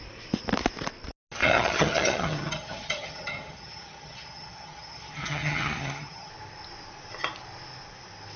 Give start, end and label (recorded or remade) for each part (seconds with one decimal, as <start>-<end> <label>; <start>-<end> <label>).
0.0-1.4 recorded; 1.4-6.3 remade; 6.3-8.4 recorded